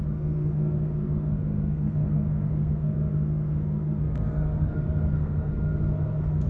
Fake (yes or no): yes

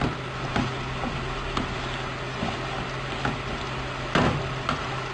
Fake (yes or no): no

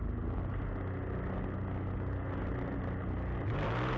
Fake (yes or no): no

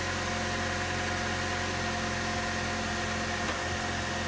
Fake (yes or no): no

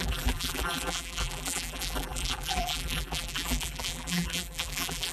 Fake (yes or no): yes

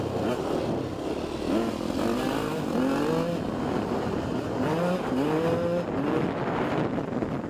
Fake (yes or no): no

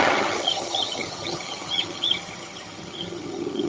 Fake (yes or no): yes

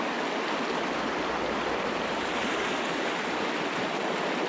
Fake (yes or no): no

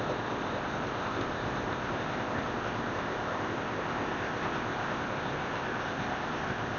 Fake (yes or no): yes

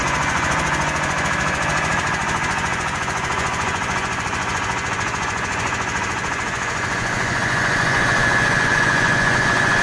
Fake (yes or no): yes